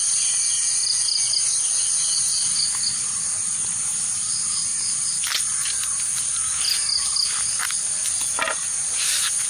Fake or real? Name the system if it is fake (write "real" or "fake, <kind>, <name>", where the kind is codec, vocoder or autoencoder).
real